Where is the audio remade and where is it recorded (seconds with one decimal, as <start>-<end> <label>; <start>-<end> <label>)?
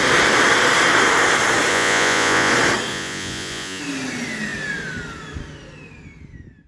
0.0-1.7 recorded; 1.7-2.5 remade; 2.5-2.9 recorded; 2.9-3.8 remade; 3.8-6.7 recorded